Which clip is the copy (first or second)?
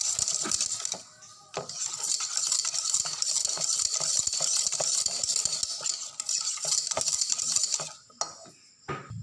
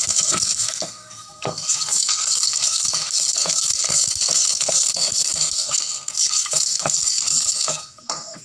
second